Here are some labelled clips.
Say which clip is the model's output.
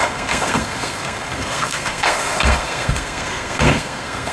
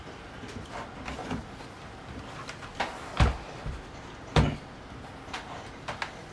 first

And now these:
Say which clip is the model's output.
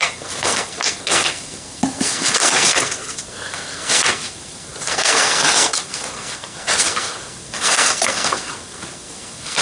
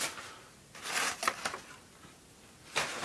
first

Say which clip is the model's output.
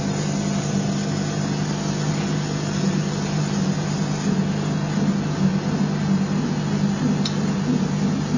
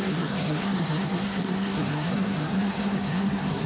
second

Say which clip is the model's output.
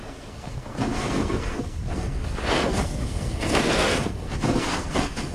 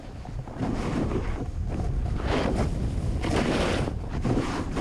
first